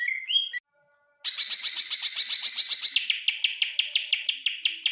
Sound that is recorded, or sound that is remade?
recorded